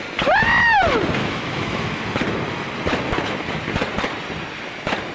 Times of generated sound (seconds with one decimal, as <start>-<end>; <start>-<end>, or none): 1.2-2.0